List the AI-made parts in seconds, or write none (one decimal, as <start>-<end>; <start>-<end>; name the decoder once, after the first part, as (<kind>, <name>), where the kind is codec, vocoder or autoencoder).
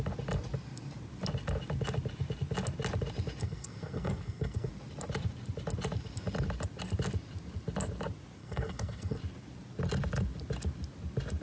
3.4-4.7 (codec, SNAC); 8.4-9.2